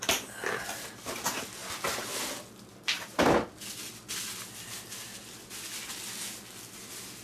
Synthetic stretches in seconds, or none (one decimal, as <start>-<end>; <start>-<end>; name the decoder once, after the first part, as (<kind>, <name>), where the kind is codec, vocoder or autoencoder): none